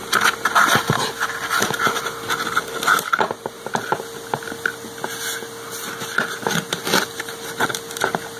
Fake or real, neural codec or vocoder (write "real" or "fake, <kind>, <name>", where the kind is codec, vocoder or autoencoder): real